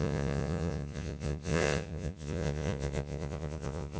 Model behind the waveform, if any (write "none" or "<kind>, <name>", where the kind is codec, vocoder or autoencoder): vocoder, Vocos